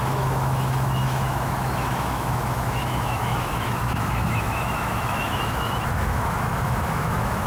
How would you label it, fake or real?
fake